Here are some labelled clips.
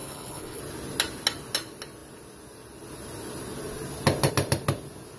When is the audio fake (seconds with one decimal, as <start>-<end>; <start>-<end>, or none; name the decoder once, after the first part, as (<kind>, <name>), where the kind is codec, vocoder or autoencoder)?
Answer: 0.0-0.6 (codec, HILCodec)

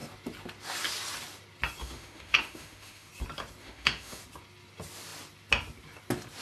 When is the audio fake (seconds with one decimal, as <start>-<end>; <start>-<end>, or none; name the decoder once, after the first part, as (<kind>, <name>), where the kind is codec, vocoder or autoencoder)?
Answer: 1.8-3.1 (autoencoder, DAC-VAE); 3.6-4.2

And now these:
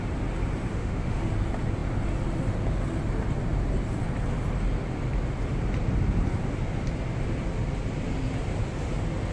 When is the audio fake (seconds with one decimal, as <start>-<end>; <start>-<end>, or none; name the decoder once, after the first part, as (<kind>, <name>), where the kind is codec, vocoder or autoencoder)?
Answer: 0.7-1.3 (autoencoder, DAC-VAE)

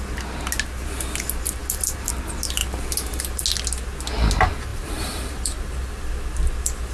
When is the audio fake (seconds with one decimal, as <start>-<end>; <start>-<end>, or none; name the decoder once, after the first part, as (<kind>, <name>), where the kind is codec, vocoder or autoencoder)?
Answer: 1.6-2.1 (vocoder, BigVGAN v2); 4.7-6.1